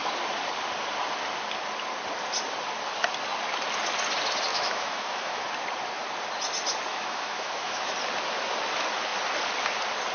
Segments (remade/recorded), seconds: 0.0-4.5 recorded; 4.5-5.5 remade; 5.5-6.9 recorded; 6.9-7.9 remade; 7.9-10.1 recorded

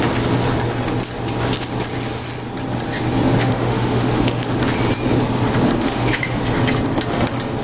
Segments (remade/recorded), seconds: 0.0-3.4 recorded; 3.4-4.5 remade; 4.5-5.8 recorded; 5.8-6.4 remade; 6.4-7.6 recorded

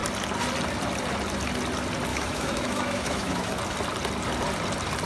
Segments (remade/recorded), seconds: 0.0-2.1 recorded; 2.1-3.6 remade; 3.6-5.1 recorded

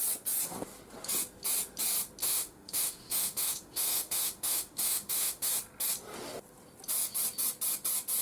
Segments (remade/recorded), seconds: 0.0-2.2 recorded; 2.2-5.5 remade; 5.5-8.2 recorded

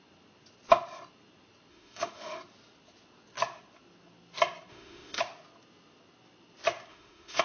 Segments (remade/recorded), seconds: 0.0-1.7 recorded; 1.7-2.4 remade; 2.4-4.7 recorded; 4.7-5.2 remade; 5.2-6.9 recorded; 6.9-7.4 remade

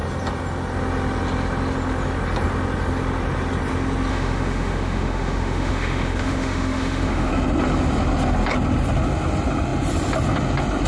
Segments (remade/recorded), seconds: 0.0-4.1 recorded; 4.1-7.3 remade; 7.3-10.9 recorded